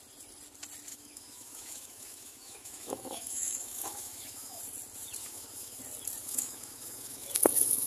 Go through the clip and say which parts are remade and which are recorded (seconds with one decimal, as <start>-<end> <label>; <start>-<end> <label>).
0.0-0.9 recorded; 0.9-4.6 remade; 4.6-5.2 recorded; 5.2-5.8 remade; 5.8-6.2 recorded; 6.2-7.9 remade